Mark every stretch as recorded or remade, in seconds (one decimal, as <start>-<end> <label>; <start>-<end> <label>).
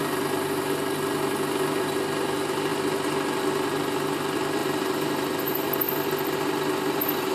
0.0-4.6 recorded; 4.6-5.7 remade; 5.7-7.3 recorded